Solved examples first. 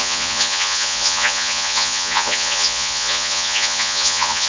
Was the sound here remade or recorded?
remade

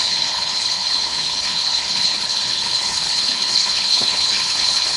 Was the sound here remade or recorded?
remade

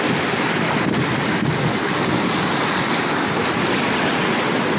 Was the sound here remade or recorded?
recorded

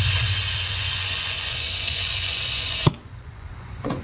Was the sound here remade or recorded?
remade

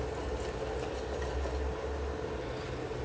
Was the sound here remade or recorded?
recorded